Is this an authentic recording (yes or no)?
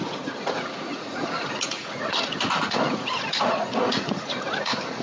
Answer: no